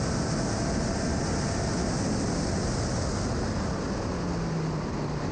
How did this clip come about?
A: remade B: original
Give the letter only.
B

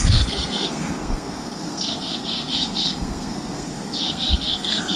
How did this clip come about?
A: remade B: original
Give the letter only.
A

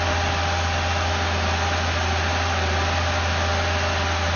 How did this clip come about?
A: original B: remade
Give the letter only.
A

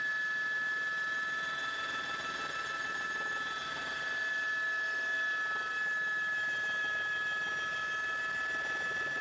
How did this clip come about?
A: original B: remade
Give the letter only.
A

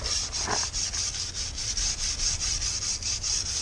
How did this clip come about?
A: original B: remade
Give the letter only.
A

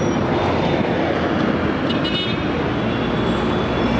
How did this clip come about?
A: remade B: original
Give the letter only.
B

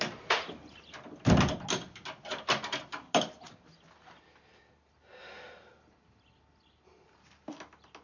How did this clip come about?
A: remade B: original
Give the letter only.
B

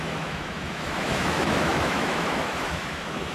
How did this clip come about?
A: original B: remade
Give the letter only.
B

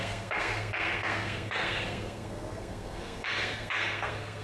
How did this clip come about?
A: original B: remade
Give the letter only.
B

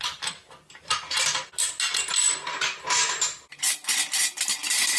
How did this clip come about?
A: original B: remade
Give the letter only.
A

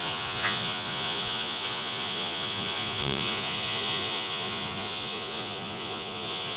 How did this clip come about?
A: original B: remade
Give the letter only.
B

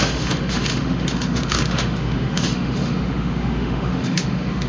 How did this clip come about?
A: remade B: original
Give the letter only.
A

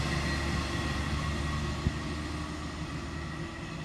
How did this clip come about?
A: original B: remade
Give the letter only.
A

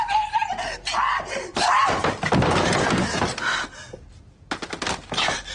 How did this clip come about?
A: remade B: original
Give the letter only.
B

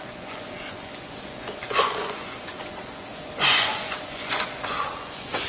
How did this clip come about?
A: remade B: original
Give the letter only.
A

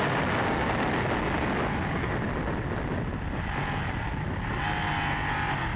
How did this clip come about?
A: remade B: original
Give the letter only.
B